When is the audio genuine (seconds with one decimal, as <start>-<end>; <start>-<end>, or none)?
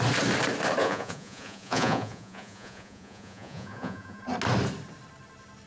0.0-0.8; 4.2-5.7